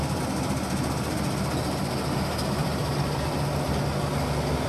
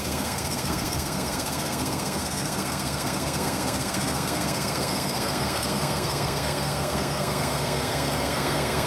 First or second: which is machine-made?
second